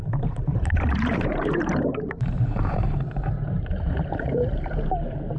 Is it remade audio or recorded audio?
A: remade